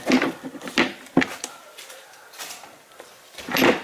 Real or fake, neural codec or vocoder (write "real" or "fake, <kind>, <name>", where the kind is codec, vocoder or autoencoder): fake, vocoder, BigVGAN v2